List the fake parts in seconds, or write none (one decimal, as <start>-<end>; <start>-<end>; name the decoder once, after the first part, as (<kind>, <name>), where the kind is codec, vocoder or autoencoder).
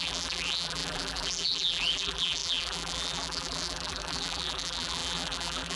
0.0-5.8 (vocoder, BigVGAN v2)